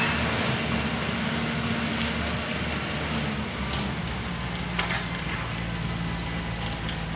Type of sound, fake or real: real